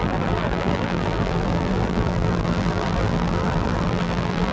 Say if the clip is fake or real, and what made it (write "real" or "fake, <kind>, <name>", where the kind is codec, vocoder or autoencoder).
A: fake, vocoder, BigVGAN v2